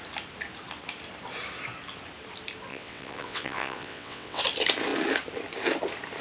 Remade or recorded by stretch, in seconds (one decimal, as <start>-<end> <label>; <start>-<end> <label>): 0.0-2.7 recorded; 2.7-4.4 remade; 4.4-6.2 recorded